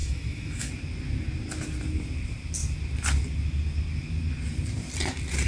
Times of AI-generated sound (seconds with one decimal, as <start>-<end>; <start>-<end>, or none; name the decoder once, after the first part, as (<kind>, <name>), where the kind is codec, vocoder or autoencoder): 0.0-0.7 (autoencoder, DAC-VAE)